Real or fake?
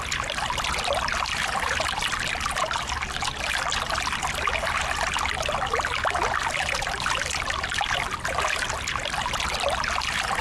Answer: real